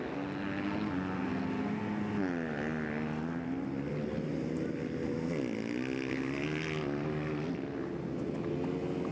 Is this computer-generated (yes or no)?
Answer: no